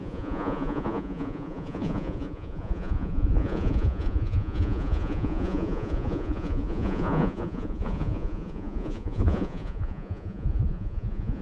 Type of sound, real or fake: fake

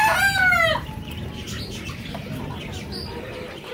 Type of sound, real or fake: fake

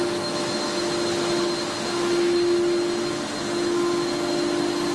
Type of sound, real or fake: real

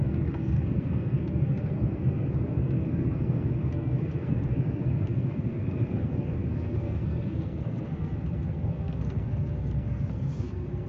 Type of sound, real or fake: fake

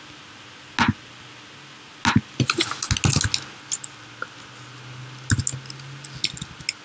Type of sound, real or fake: real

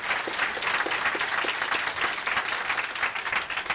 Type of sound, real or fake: real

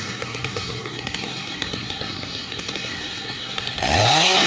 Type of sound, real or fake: fake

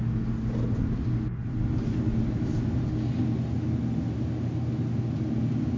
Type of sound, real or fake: real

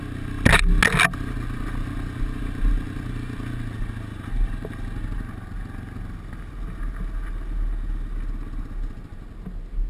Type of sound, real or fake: real